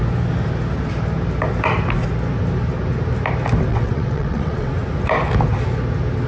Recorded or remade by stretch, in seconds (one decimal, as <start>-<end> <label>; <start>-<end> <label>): 0.0-3.7 recorded; 3.7-4.7 remade; 4.7-6.3 recorded